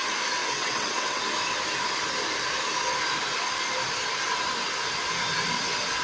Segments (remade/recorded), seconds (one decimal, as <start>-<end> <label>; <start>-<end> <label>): 0.0-0.4 recorded; 0.4-1.2 remade; 1.2-6.0 recorded

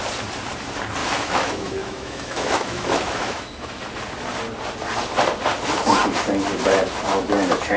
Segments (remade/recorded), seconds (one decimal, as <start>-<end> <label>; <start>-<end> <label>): 0.0-1.0 recorded; 1.0-3.8 remade; 3.8-7.8 recorded

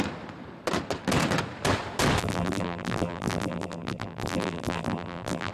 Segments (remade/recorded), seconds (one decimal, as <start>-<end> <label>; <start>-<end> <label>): 0.0-2.2 recorded; 2.2-5.5 remade

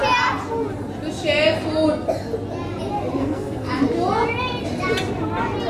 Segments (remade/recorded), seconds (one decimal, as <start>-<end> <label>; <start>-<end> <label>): 0.0-3.2 recorded; 3.2-3.7 remade; 3.7-5.7 recorded

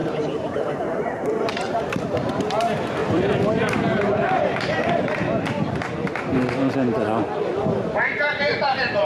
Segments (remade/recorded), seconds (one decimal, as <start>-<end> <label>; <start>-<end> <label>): 0.0-2.4 remade; 2.4-3.0 recorded; 3.0-4.7 remade; 4.7-9.0 recorded